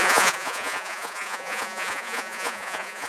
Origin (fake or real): fake